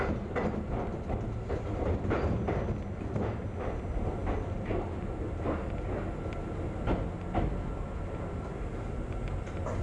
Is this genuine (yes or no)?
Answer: yes